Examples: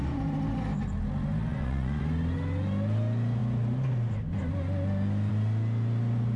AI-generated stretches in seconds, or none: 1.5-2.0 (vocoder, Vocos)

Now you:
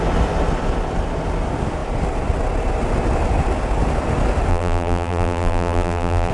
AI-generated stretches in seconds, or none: 4.5-6.3 (vocoder, BigVGAN v2)

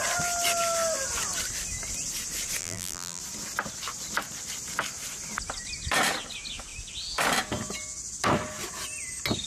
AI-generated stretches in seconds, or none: 2.6-3.2 (vocoder, BigVGAN v2)

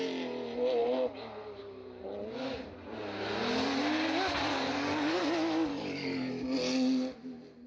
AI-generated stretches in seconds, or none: 4.5-5.2 (codec, DAC); 5.7-6.3